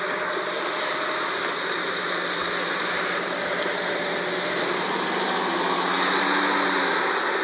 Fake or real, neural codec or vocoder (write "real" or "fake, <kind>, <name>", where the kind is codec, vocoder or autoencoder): real